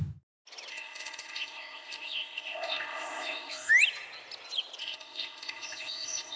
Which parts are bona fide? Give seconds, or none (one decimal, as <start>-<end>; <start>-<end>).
0.0-0.7; 3.7-4.8